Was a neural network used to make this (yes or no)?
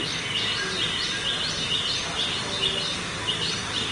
no